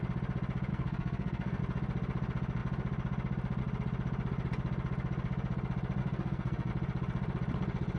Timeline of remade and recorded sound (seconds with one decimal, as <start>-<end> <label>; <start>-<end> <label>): 0.0-0.7 recorded; 0.7-1.6 remade; 1.6-6.0 recorded; 6.0-6.7 remade; 6.7-8.0 recorded